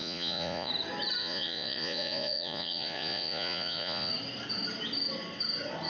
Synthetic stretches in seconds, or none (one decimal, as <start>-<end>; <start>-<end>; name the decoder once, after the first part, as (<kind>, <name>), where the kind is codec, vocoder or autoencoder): 0.0-0.7 (vocoder, Vocos); 1.2-4.1